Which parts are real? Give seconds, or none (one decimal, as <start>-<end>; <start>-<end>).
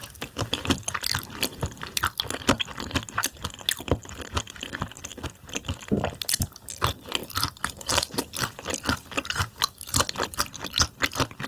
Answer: 2.0-7.2; 10.4-11.5